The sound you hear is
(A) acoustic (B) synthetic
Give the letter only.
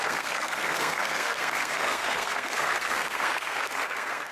B